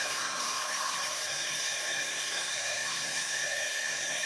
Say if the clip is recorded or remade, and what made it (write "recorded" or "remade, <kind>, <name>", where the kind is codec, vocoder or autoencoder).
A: remade, codec, SNAC